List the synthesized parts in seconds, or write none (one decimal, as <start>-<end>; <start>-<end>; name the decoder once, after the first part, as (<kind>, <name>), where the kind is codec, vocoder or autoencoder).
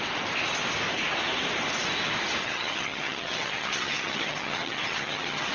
2.4-5.5 (vocoder, HiFi-GAN)